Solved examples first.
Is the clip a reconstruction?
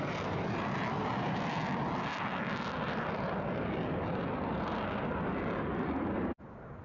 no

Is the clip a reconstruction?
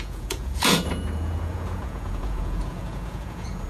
yes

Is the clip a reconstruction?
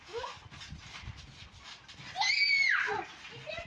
no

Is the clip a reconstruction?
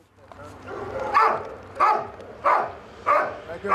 no